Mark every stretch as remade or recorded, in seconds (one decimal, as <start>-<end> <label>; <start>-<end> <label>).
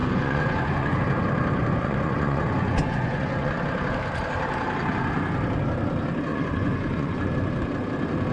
0.0-1.0 remade; 1.0-1.6 recorded; 1.6-3.6 remade; 3.6-6.3 recorded; 6.3-7.3 remade; 7.3-8.3 recorded